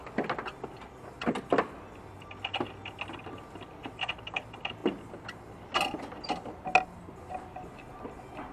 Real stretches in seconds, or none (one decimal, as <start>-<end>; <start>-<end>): 0.0-8.5